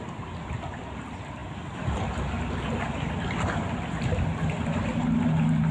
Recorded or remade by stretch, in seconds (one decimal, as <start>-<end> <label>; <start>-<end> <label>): 0.0-5.7 recorded